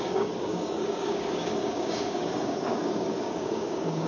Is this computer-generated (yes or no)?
yes